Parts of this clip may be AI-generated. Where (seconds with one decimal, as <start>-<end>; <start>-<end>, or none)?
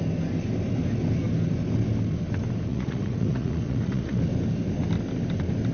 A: 2.7-4.2